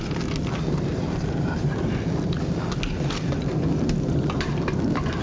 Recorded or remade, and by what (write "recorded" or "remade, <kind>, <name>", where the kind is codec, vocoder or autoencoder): recorded